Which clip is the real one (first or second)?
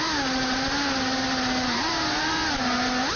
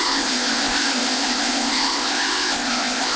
first